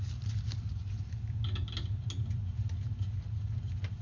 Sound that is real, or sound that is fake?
real